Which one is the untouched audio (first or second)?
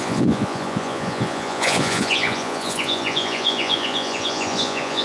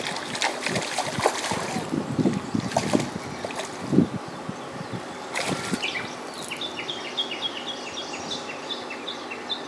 second